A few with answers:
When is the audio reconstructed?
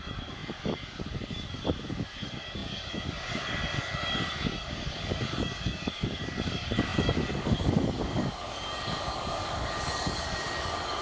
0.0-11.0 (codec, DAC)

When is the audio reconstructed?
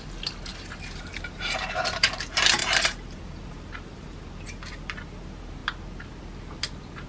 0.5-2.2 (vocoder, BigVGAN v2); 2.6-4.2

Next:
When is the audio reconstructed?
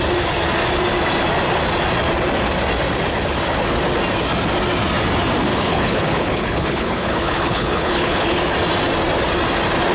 5.5-8.4 (codec, HILCodec)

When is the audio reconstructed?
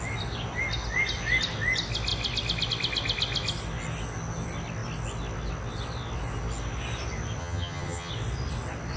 7.4-8.1 (vocoder, HiFi-GAN)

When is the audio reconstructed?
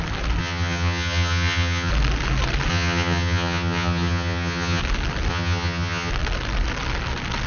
0.4-1.9 (vocoder, HiFi-GAN); 2.7-4.8; 5.3-6.1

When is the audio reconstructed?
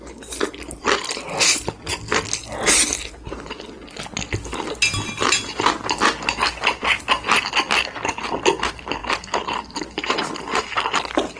9.0-10.3 (vocoder, BigVGAN v2)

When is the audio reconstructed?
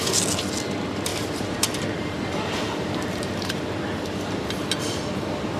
1.1-4.5 (vocoder, BigVGAN v2)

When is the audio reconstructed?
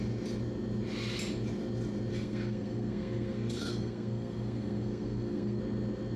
2.1-5.6 (codec, SNAC)